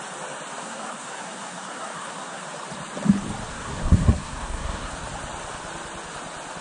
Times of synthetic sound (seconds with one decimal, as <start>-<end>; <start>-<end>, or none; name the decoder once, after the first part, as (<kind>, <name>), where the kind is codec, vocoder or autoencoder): 0.6-2.4 (codec, SNAC); 3.5-4.9